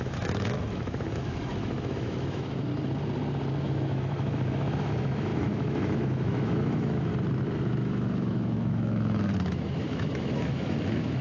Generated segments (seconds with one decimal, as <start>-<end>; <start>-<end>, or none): 0.0-2.7; 3.6-7.1; 7.6-11.2